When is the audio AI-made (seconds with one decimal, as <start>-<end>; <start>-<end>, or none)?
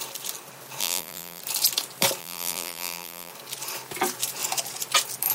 0.8-1.4; 2.2-3.3